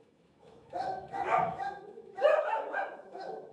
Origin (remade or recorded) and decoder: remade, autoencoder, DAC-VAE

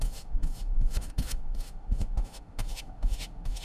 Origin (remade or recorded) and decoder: remade, autoencoder, DAC-VAE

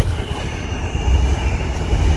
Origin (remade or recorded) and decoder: recorded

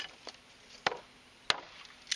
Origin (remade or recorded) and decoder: recorded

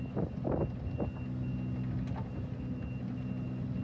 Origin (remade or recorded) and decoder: recorded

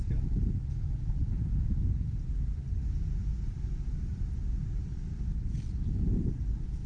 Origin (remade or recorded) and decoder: recorded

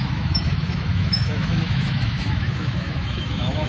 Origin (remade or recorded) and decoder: remade, autoencoder, DAC-VAE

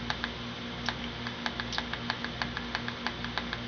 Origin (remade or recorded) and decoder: recorded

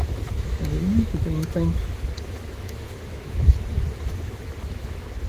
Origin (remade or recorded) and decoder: remade, autoencoder, DAC-VAE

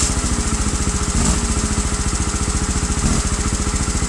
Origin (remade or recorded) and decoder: recorded